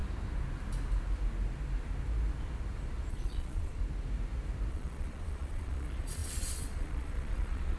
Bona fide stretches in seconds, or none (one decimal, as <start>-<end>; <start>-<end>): 0.0-3.1; 3.8-4.7